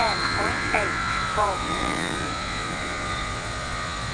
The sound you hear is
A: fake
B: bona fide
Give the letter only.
A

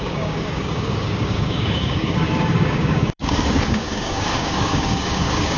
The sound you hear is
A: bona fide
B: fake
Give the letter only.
B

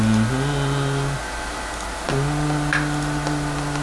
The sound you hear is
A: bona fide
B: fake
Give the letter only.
A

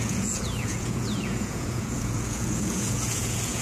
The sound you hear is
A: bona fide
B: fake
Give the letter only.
B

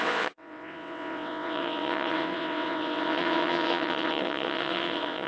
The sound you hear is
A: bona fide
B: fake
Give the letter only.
B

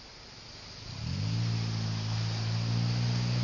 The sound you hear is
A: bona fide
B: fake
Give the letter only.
A